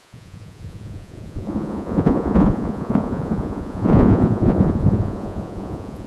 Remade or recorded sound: remade